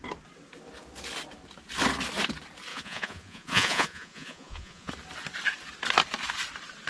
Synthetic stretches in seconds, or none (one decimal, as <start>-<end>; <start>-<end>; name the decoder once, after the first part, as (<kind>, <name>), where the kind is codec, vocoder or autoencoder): 2.7-4.9 (vocoder, Vocos)